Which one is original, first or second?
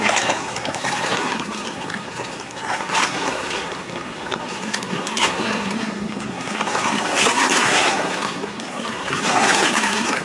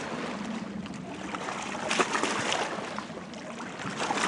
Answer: second